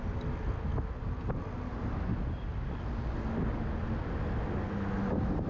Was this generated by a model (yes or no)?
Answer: no